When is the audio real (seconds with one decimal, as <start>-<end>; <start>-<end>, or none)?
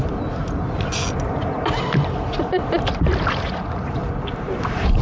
0.4-3.3